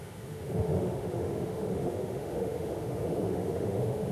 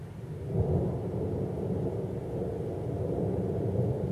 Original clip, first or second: second